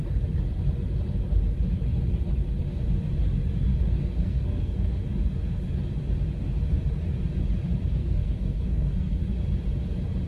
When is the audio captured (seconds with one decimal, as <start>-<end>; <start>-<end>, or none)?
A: 0.0-3.7; 5.0-8.0; 9.2-10.3